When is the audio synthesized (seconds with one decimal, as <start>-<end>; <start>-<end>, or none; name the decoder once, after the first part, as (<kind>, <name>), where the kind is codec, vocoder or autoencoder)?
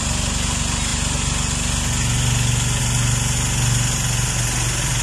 none